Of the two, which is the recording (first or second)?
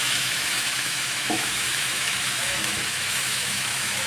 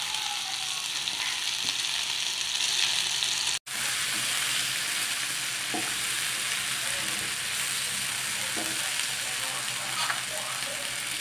second